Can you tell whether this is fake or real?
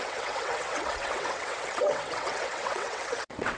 fake